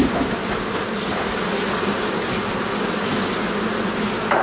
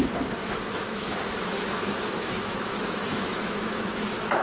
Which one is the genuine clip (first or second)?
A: first